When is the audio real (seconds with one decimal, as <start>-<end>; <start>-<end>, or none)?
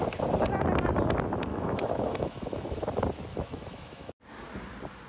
0.0-1.5; 2.9-3.3; 4.1-5.1